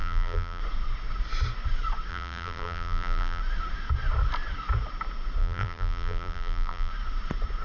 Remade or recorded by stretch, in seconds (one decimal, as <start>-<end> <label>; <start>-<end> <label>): 0.0-0.6 remade; 0.6-2.1 recorded; 2.1-3.4 remade; 3.4-5.4 recorded; 5.4-6.9 remade; 6.9-7.6 recorded